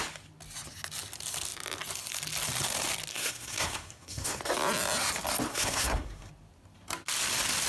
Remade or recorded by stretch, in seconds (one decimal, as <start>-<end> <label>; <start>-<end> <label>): 0.0-3.1 recorded; 3.1-4.4 remade; 4.4-5.5 recorded; 5.5-6.3 remade; 6.3-7.7 recorded